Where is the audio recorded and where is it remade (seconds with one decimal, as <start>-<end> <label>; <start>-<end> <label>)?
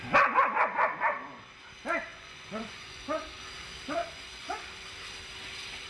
0.0-2.1 recorded; 2.1-3.4 remade; 3.4-4.0 recorded; 4.0-4.6 remade; 4.6-5.9 recorded